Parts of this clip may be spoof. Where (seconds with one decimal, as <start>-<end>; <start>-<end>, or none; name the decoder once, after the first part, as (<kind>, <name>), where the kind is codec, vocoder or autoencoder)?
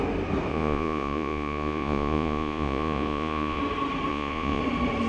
0.5-3.6 (vocoder, Vocos); 4.1-4.6